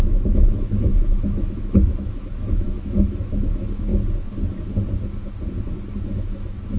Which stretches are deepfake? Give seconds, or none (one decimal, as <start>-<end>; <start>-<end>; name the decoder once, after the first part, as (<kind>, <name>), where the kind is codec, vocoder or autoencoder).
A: 0.0-3.9 (autoencoder, DAC-VAE); 5.9-6.8